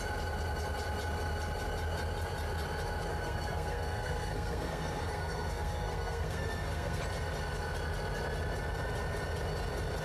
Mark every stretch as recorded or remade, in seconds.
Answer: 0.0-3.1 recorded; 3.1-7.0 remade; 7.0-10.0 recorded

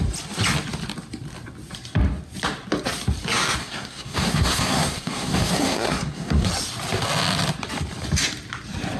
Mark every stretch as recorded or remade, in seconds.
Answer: 0.0-3.6 recorded; 3.6-6.5 remade; 6.5-9.0 recorded

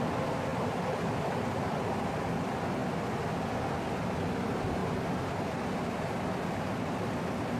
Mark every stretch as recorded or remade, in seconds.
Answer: 0.0-4.8 recorded; 4.8-5.9 remade; 5.9-7.6 recorded